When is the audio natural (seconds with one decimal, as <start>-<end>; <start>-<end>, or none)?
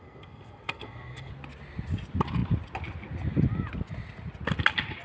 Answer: 1.3-5.0